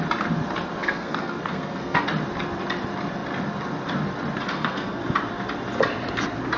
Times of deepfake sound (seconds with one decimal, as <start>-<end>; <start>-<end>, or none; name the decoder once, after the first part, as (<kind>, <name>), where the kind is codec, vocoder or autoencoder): 0.8-2.0 (codec, SNAC); 4.5-5.0